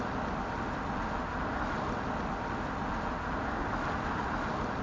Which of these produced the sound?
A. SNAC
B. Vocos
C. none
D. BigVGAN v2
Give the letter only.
C